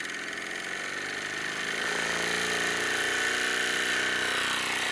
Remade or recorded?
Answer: recorded